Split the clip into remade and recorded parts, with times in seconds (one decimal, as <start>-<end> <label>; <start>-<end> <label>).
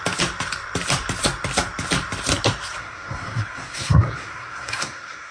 0.0-2.8 recorded; 2.8-5.3 remade